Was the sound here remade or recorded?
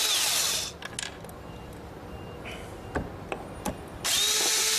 recorded